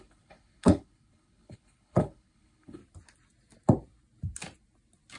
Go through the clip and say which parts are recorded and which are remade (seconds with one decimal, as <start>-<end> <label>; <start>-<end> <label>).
0.0-2.8 remade; 2.8-5.2 recorded